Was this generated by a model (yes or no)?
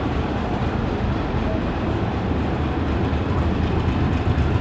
yes